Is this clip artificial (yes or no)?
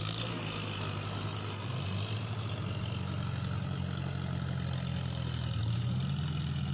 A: no